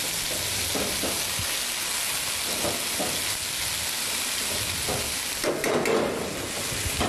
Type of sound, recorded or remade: recorded